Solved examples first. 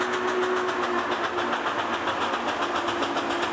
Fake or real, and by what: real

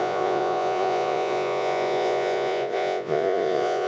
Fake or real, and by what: fake, vocoder, Vocos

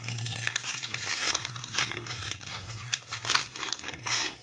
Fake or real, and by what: fake, codec, SNAC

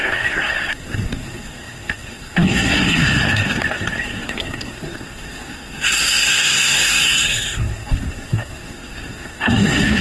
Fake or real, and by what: fake, codec, SNAC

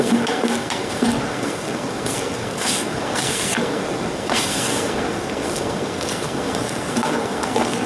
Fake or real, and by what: fake, codec, SNAC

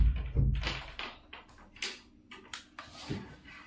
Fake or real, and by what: real